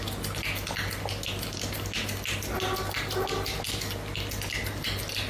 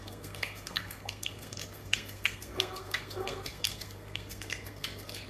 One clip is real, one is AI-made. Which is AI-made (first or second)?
second